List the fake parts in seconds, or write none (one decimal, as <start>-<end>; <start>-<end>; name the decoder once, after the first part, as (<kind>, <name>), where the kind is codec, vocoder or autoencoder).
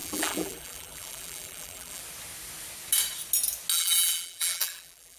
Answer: 0.0-2.0 (vocoder, BigVGAN v2); 3.7-5.2